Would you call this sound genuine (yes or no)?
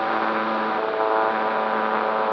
yes